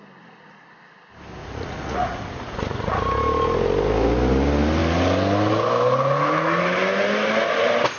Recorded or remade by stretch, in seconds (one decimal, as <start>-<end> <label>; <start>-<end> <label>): 0.0-1.4 recorded; 1.4-3.0 remade; 3.0-8.0 recorded